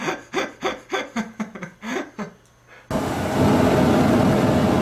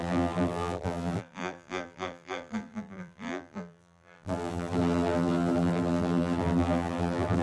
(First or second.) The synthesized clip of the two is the second